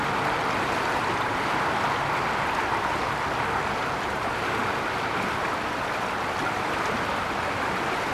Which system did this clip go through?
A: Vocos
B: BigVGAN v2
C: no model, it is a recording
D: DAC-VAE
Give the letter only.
B